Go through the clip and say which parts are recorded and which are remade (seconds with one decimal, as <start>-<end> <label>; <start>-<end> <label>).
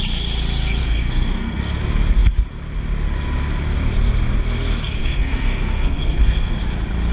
0.0-0.8 recorded; 0.8-1.6 remade; 1.6-5.0 recorded; 5.0-6.6 remade; 6.6-7.1 recorded